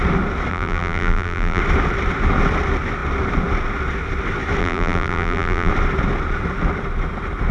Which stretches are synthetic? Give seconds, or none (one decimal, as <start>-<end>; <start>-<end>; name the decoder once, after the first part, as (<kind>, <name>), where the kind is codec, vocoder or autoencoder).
0.5-1.6 (vocoder, BigVGAN v2); 4.6-5.7

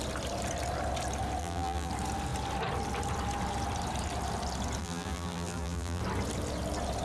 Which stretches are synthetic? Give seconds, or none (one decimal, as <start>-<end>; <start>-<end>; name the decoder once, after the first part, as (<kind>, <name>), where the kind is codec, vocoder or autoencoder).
1.4-1.9 (vocoder, BigVGAN v2); 4.8-6.0

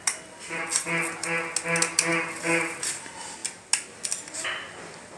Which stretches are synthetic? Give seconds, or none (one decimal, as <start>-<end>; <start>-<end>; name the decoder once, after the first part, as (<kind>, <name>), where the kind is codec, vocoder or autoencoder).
2.1-2.8 (vocoder, BigVGAN v2)

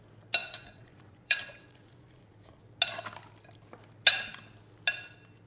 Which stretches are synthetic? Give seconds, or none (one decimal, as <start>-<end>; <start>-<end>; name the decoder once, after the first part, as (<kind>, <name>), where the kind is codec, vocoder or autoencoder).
0.4-2.6 (vocoder, Vocos)

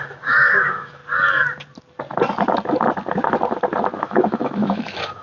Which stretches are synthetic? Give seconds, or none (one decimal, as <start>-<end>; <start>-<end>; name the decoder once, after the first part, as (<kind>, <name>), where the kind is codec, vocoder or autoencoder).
0.0-1.0 (autoencoder, DAC-VAE); 4.0-5.2

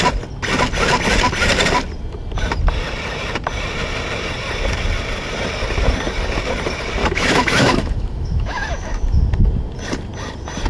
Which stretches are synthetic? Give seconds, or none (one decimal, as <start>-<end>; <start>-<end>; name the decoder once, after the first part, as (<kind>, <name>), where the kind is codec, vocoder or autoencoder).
7.0-9.2 (autoencoder, DAC-VAE)